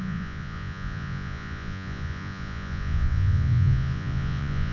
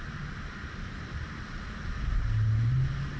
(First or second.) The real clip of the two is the second